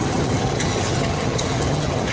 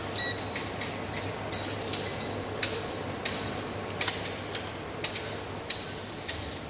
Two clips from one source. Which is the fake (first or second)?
first